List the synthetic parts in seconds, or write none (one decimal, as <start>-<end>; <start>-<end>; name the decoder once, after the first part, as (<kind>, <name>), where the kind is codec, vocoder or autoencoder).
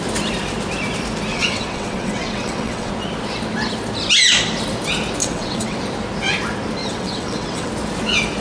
1.3-2.9 (vocoder, WaveNeXt); 5.2-5.8; 6.8-7.7